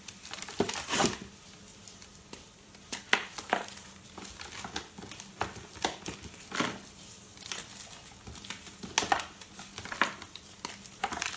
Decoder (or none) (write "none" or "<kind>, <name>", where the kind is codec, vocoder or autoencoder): none